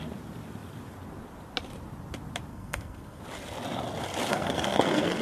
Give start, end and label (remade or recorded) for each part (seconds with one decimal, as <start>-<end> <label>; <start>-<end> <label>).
0.0-2.5 recorded; 2.5-3.2 remade; 3.2-4.3 recorded; 4.3-5.2 remade